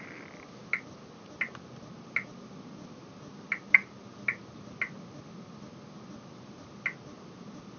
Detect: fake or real real